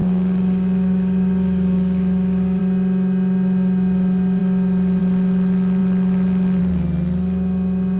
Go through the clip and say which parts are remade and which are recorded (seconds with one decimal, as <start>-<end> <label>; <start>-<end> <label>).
0.0-2.6 remade; 2.6-8.0 recorded